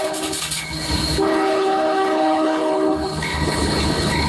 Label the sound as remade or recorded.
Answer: remade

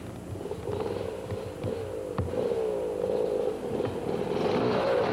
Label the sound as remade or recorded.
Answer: recorded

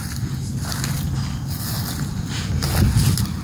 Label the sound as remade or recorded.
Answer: recorded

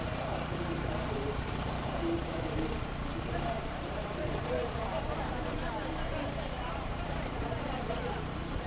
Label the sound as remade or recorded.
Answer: remade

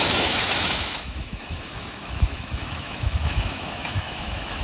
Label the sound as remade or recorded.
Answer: remade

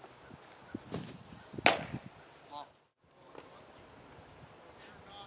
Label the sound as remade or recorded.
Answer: recorded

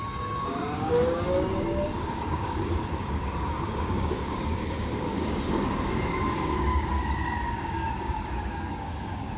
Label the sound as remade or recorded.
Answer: remade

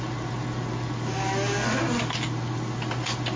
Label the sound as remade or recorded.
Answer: recorded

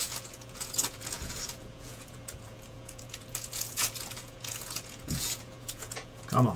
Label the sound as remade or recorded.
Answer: remade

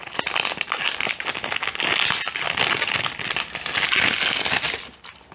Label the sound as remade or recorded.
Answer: recorded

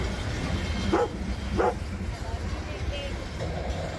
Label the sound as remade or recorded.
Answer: recorded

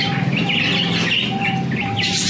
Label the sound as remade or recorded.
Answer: recorded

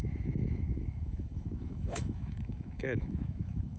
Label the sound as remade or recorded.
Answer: remade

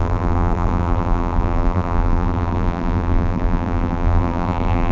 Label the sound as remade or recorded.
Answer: remade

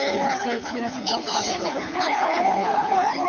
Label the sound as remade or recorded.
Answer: remade